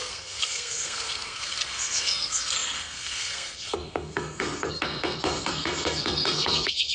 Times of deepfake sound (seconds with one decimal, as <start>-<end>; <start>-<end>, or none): 0.0-6.9